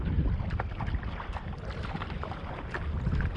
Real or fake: real